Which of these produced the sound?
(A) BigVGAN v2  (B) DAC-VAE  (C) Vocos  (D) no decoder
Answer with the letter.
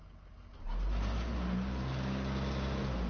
D